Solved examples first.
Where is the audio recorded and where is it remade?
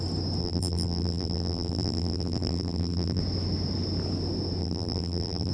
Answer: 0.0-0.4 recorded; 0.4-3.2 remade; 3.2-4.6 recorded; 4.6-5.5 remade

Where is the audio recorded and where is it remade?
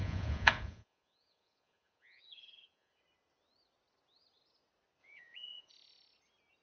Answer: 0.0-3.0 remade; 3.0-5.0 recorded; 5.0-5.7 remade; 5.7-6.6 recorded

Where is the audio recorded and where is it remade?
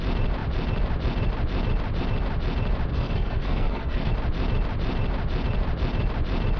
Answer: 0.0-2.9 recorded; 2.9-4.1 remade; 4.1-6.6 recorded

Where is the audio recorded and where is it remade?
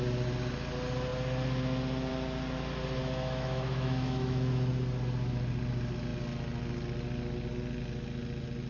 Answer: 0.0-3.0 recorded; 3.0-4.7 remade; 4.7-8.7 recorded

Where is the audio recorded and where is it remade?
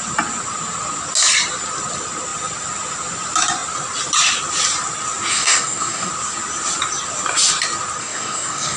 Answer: 0.0-5.3 recorded; 5.3-6.1 remade; 6.1-8.0 recorded; 8.0-8.8 remade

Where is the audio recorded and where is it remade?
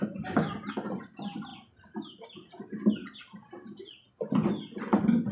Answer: 0.0-5.3 recorded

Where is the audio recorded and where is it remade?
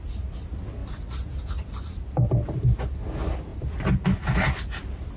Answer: 0.0-5.2 recorded